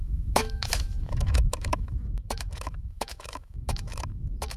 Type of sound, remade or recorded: remade